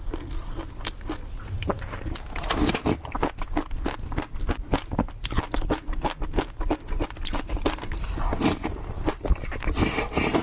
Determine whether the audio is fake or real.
real